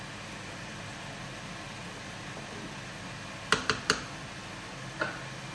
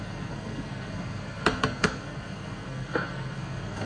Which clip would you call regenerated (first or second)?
second